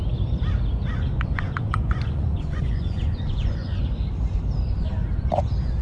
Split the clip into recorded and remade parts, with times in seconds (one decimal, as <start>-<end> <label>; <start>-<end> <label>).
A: 0.0-0.9 recorded; 0.9-3.8 remade; 3.8-5.8 recorded